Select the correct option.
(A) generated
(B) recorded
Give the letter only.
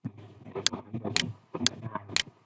B